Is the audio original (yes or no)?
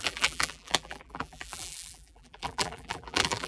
no